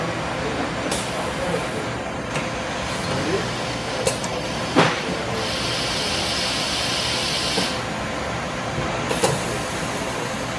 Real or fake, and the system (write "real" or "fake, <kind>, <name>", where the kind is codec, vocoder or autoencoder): real